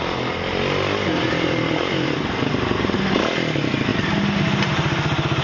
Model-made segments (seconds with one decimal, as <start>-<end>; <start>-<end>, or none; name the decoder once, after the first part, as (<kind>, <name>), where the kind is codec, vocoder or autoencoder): none